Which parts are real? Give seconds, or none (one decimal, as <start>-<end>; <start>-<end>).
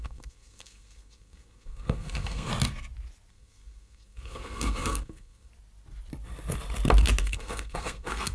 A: 2.5-3.3; 5.5-7.2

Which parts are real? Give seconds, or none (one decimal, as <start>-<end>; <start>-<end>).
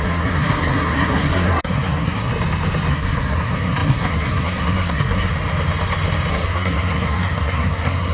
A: 2.3-2.9; 5.3-6.3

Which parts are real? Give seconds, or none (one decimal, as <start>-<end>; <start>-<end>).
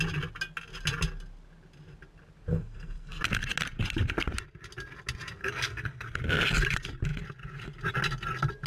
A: 0.0-2.5; 3.2-5.4; 6.2-8.7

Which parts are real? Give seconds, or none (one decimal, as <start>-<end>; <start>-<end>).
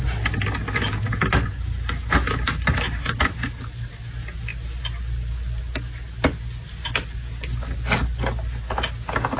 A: 0.0-9.4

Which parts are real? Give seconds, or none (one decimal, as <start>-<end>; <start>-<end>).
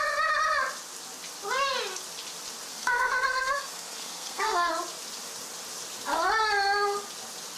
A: 0.0-2.7; 4.7-7.6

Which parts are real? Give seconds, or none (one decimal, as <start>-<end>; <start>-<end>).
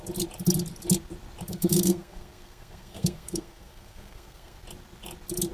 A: 0.0-1.5; 4.6-5.5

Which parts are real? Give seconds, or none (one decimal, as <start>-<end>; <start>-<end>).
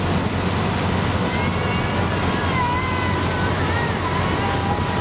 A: 0.0-5.0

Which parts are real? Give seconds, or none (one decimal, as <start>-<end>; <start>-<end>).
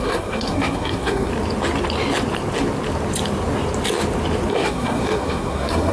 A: 1.3-4.5